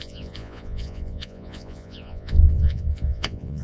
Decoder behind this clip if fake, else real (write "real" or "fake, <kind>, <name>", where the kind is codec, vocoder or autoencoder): fake, vocoder, Vocos